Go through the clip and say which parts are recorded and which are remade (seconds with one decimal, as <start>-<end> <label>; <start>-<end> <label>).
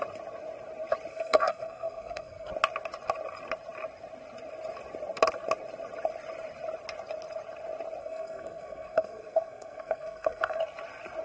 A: 0.0-1.1 recorded; 1.1-2.5 remade; 2.5-8.0 recorded; 8.0-10.6 remade; 10.6-11.2 recorded